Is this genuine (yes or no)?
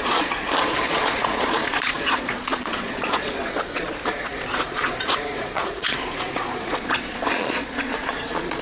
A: no